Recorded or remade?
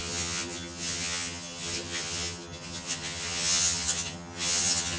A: remade